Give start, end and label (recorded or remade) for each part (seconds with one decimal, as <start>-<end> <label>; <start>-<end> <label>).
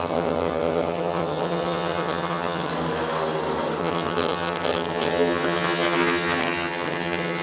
0.0-2.7 remade; 2.7-3.8 recorded; 3.8-7.4 remade